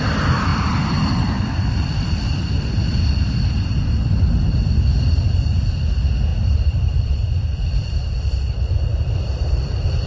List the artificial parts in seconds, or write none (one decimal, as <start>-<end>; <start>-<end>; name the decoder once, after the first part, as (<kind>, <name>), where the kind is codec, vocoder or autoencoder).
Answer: 0.5-1.9 (vocoder, BigVGAN v2); 6.3-8.7